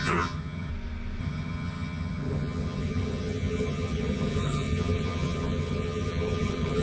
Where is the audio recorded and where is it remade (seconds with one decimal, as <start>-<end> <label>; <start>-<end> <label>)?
0.0-0.7 remade; 0.7-1.2 recorded; 1.2-6.8 remade